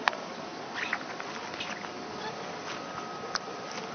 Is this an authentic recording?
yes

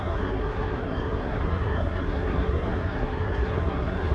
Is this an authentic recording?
no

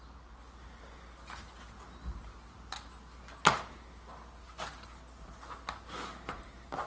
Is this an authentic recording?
yes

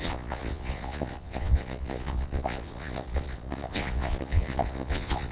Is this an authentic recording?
no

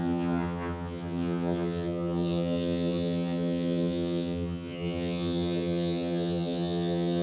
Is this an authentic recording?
no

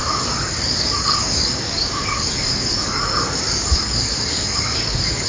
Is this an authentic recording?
no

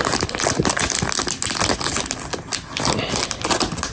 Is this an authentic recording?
yes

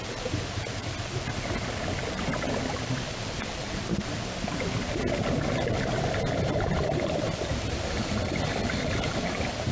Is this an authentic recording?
yes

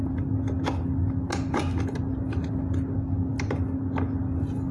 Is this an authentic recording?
yes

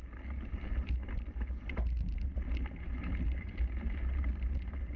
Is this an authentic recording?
yes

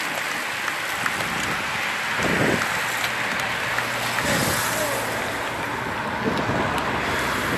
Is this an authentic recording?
yes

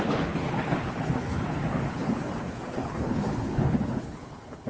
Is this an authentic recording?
no